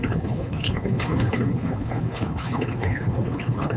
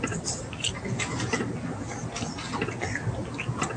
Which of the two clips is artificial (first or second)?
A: first